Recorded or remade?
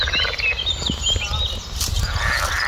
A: recorded